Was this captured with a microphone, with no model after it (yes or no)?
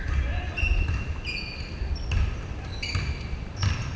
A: yes